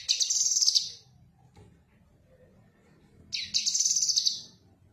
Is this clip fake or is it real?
real